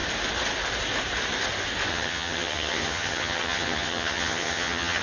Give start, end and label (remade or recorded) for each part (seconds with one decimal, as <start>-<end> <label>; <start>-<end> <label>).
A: 0.0-1.9 recorded; 1.9-5.0 remade